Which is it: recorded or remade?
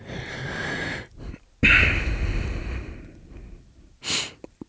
recorded